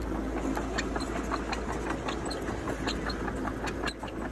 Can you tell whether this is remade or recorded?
recorded